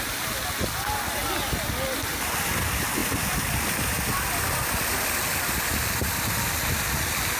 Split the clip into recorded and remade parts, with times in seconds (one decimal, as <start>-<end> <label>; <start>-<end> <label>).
0.0-7.4 recorded